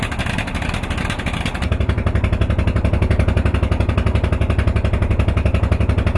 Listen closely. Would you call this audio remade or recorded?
recorded